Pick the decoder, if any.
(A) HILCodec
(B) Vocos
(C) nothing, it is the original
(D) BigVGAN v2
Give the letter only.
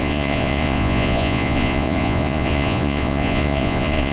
B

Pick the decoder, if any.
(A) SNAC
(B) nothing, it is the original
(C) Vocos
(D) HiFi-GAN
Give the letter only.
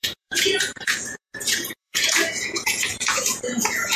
C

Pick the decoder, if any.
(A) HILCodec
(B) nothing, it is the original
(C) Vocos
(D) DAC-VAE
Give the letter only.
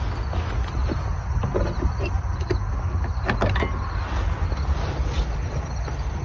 B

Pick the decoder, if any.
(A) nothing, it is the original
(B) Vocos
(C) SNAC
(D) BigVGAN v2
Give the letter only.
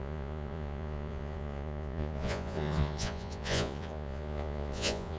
B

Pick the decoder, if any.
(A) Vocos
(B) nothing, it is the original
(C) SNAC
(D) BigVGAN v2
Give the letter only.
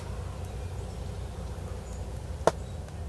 B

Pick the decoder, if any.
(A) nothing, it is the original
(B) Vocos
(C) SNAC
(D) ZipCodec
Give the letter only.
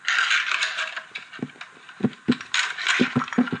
A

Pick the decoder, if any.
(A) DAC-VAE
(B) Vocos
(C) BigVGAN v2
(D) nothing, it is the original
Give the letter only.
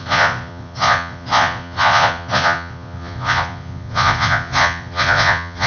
B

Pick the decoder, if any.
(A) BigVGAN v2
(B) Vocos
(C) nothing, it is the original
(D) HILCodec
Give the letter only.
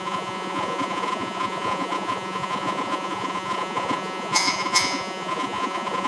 B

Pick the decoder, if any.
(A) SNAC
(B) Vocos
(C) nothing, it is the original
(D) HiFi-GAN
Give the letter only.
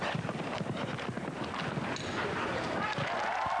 C